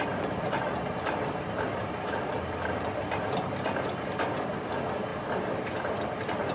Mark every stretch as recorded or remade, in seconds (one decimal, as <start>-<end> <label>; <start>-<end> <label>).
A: 0.0-6.5 recorded